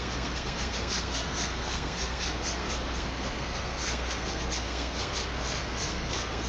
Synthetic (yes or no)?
yes